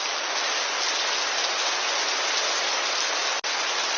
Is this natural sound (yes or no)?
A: yes